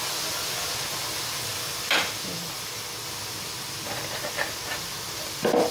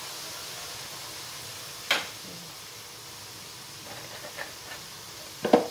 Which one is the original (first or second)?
first